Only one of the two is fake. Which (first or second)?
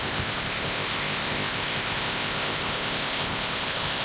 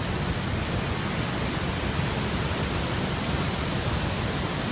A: first